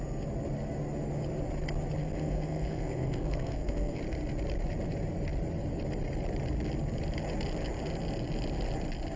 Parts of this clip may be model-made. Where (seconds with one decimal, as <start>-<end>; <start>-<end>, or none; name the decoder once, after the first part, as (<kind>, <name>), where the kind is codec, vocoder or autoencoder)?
2.0-4.0 (codec, SNAC)